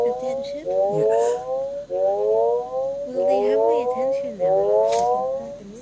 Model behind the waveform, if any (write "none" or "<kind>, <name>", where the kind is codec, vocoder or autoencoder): none